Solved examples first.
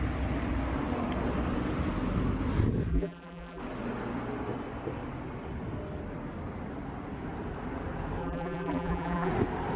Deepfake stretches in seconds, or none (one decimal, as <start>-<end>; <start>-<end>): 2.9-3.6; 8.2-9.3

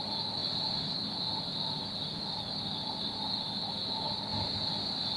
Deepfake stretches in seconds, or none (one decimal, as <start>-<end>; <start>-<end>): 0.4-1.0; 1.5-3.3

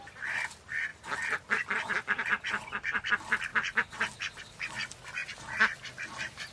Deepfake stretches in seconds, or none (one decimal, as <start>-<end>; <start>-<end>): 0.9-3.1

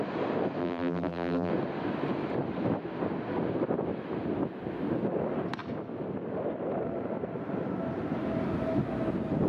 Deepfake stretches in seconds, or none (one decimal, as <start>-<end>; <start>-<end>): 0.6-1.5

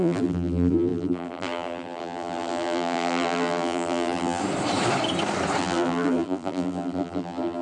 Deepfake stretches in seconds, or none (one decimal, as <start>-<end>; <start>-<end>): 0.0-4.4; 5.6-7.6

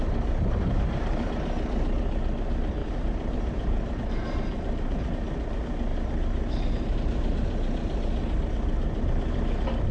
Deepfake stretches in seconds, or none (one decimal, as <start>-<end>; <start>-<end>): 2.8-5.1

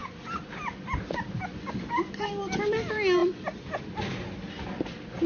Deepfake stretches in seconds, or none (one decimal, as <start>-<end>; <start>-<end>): 0.0-2.3; 3.2-3.9